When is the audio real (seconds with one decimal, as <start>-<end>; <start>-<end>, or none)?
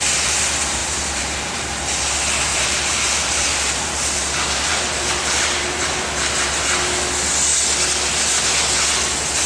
0.0-0.8; 1.7-2.5; 6.5-9.5